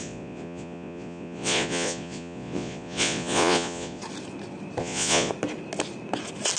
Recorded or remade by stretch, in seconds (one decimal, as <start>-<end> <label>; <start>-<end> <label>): 0.0-4.0 remade; 4.0-4.8 recorded; 4.8-5.3 remade; 5.3-6.6 recorded

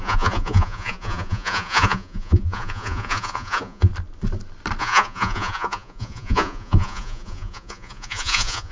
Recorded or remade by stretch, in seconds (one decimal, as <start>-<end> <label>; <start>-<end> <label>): 0.0-3.9 remade; 3.9-4.8 recorded; 4.8-8.7 remade

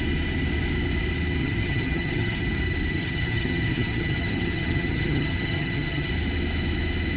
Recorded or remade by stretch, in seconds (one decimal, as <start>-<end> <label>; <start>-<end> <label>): 0.0-1.4 recorded; 1.4-2.4 remade; 2.4-2.9 recorded; 2.9-6.1 remade; 6.1-7.2 recorded

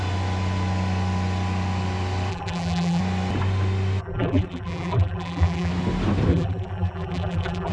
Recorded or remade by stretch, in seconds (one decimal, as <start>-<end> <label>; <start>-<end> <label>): 0.0-2.3 recorded; 2.3-3.0 remade; 3.0-4.0 recorded; 4.0-5.7 remade; 5.7-6.3 recorded; 6.3-7.7 remade

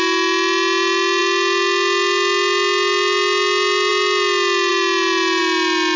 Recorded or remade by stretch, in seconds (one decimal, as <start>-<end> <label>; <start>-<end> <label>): 0.0-6.0 recorded

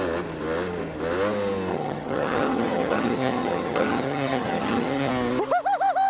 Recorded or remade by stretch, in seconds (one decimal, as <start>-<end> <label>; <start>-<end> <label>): 0.0-1.7 recorded; 1.7-5.1 remade; 5.1-6.1 recorded

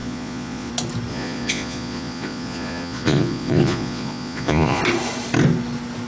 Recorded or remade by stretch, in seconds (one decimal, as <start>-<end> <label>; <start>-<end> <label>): 0.0-0.7 remade; 0.7-1.1 recorded; 1.1-4.8 remade; 4.8-6.1 recorded

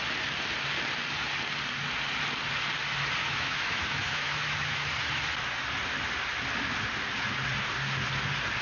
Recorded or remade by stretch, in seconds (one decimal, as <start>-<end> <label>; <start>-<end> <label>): 0.0-3.2 recorded; 3.2-4.9 remade; 4.9-8.6 recorded